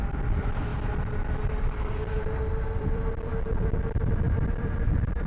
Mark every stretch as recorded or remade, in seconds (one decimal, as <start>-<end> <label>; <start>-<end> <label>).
0.0-0.7 remade; 0.7-1.5 recorded; 1.5-2.0 remade; 2.0-2.8 recorded; 2.8-5.3 remade